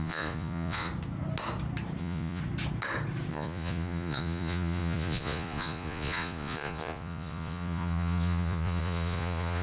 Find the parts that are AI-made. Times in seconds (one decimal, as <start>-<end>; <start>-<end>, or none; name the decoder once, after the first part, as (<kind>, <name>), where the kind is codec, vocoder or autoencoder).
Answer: 0.0-0.9 (vocoder, Vocos); 2.0-2.4; 3.3-9.6